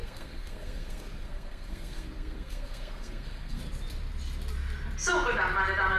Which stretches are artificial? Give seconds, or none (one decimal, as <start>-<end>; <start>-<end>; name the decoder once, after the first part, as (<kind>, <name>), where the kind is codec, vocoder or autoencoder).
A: 0.0-3.6 (codec, SNAC)